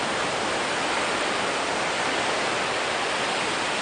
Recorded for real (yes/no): yes